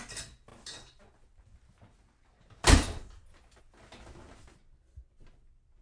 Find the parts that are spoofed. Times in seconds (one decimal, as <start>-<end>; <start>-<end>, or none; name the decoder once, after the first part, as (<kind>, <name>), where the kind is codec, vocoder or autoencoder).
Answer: none